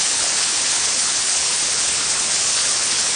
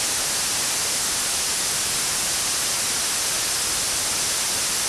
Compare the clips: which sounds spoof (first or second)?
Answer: first